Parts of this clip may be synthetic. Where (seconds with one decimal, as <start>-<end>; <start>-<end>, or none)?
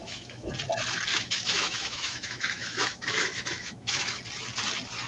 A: 0.0-0.5; 1.1-4.2